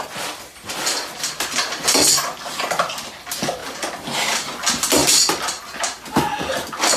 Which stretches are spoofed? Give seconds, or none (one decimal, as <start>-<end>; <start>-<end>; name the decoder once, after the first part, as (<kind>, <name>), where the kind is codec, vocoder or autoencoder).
0.5-1.1 (vocoder, BigVGAN v2); 3.6-4.5; 5.0-5.6